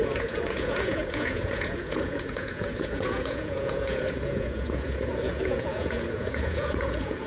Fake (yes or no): yes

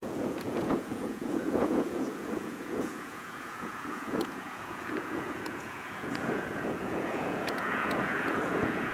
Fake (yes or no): yes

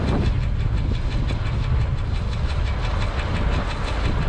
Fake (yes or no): no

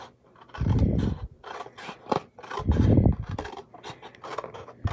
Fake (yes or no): no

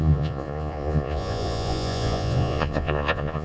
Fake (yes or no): yes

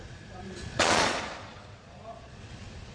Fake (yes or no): yes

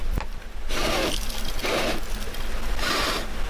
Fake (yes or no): no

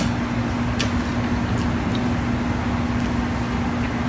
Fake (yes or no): no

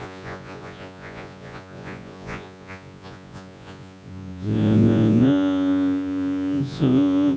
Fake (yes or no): yes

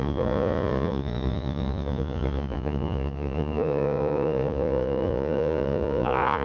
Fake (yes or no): yes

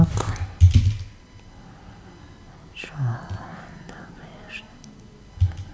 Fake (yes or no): no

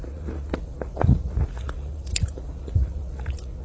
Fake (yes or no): yes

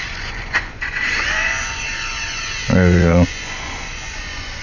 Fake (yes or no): yes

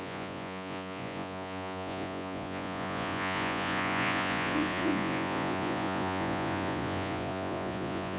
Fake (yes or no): yes